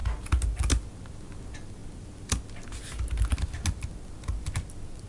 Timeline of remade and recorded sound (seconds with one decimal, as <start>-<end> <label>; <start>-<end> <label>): 0.0-5.1 recorded